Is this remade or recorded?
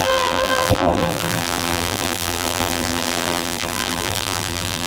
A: remade